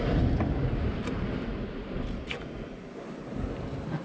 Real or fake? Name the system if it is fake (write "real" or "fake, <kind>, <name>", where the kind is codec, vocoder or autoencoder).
fake, vocoder, BigVGAN v2